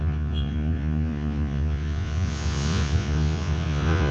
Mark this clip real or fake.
fake